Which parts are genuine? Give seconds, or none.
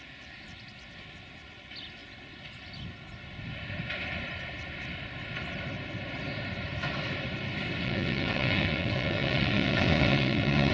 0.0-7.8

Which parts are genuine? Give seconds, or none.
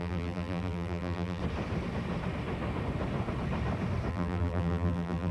1.4-4.1